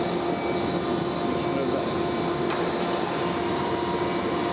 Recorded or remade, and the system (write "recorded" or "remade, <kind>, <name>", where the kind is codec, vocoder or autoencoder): recorded